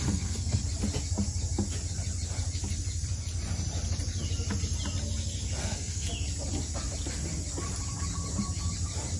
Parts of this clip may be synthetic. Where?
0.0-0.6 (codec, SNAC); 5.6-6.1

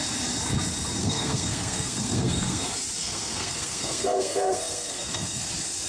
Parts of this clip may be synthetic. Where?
1.0-2.6 (codec, SNAC); 3.0-5.5

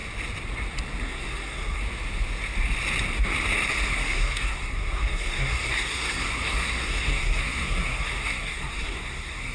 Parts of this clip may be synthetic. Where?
1.0-1.8 (codec, SNAC); 3.9-9.5